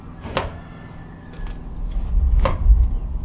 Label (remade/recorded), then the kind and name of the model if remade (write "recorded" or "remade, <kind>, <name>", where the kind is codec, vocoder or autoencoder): recorded